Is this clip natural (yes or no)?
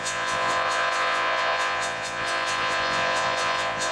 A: no